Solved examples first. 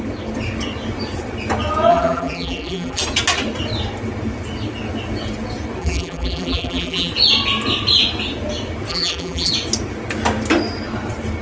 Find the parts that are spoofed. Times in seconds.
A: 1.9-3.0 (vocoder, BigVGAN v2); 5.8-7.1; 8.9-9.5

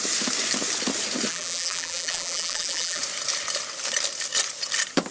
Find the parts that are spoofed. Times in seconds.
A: 1.3-3.0 (vocoder, BigVGAN v2)

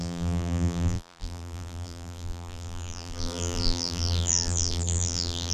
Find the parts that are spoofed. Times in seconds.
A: 0.0-5.5 (vocoder, BigVGAN v2)

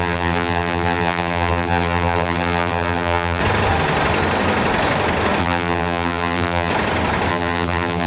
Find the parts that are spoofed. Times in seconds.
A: 0.0-3.4 (vocoder, BigVGAN v2); 5.4-6.7; 7.3-8.1

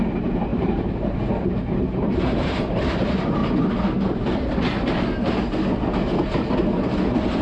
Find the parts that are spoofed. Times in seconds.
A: 0.5-2.8 (vocoder, BigVGAN v2)

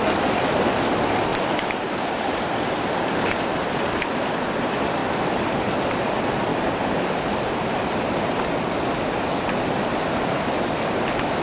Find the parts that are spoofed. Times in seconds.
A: 1.3-3.6 (vocoder, BigVGAN v2); 5.0-5.8; 6.5-8.8